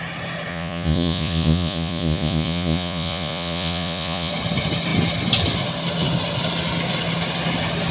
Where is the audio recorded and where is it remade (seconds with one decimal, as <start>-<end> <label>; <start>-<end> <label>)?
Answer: 0.0-0.5 recorded; 0.5-4.3 remade; 4.3-7.9 recorded